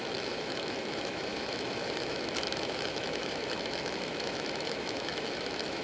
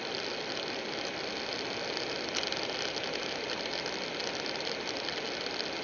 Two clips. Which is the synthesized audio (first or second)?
first